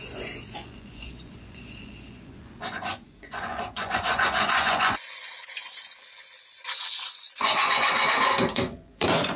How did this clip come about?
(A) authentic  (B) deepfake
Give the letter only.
B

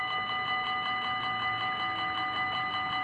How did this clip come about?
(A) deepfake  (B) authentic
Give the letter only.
B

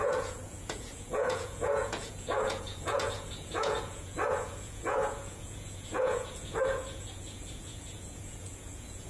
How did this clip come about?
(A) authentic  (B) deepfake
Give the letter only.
B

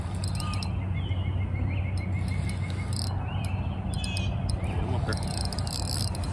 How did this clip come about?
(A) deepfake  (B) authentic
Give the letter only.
B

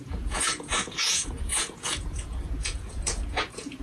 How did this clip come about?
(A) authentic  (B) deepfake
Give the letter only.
B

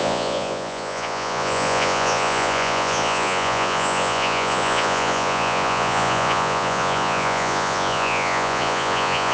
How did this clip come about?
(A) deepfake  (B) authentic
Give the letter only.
A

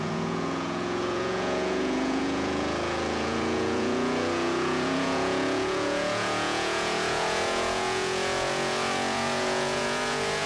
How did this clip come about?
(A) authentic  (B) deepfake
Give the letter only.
B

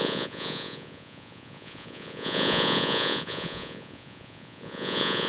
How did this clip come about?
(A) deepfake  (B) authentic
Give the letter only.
A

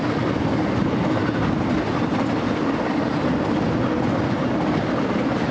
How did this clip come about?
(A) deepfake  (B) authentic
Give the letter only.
B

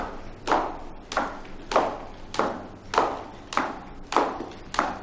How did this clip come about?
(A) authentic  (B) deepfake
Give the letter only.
A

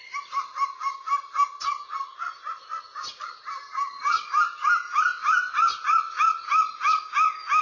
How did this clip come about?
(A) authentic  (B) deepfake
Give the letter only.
A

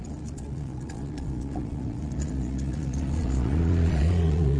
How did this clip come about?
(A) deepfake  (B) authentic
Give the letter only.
A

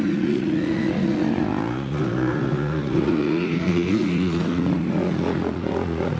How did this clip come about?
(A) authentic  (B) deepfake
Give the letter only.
B